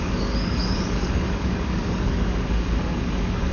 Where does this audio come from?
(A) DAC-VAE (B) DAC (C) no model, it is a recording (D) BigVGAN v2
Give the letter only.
B